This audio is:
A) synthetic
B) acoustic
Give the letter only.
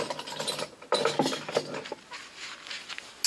B